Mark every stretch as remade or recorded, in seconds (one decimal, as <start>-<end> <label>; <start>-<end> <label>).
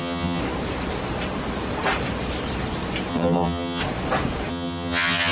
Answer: 0.0-0.4 remade; 0.4-3.1 recorded; 3.1-3.8 remade; 3.8-4.5 recorded; 4.5-5.3 remade